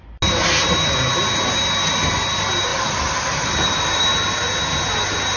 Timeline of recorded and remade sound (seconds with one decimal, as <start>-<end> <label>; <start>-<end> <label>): 0.0-2.7 recorded; 2.7-4.0 remade; 4.0-5.4 recorded